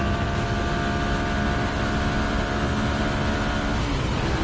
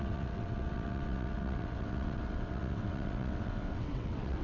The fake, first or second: second